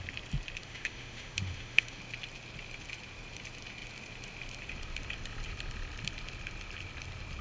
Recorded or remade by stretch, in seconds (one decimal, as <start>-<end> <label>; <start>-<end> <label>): 0.0-0.6 recorded; 0.6-2.0 remade; 2.0-7.4 recorded

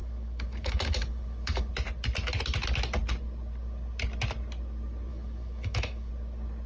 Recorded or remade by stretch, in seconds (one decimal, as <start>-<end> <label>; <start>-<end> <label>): 0.0-1.7 remade; 1.7-5.1 recorded; 5.1-6.1 remade; 6.1-6.7 recorded

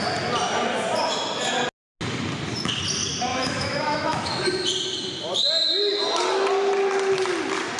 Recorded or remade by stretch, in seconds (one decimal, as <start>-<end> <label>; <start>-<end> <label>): 0.0-3.3 recorded; 3.3-4.5 remade; 4.5-7.8 recorded

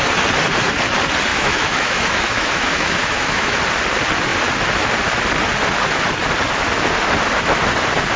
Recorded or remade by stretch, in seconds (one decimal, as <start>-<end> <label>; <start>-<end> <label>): 0.0-1.3 recorded; 1.3-3.6 remade; 3.6-8.2 recorded

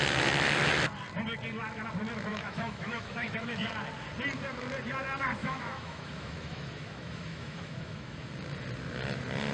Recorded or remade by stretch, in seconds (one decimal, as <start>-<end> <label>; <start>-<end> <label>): 0.0-2.3 recorded; 2.3-3.7 remade; 3.7-5.4 recorded; 5.4-8.3 remade; 8.3-9.5 recorded

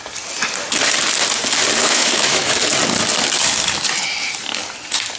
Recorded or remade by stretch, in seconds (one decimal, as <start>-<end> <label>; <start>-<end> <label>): 0.0-1.8 recorded; 1.8-2.6 remade; 2.6-5.2 recorded

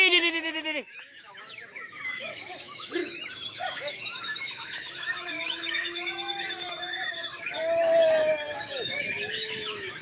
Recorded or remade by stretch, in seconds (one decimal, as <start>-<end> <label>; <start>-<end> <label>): 0.0-10.0 remade

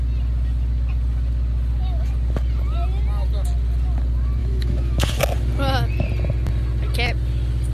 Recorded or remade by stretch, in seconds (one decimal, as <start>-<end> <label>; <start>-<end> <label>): 0.0-4.4 recorded; 4.4-5.2 remade; 5.2-7.7 recorded